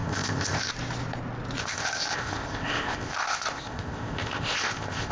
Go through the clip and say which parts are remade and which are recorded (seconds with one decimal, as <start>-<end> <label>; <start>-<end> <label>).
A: 0.0-0.7 remade; 0.7-1.6 recorded; 1.6-5.1 remade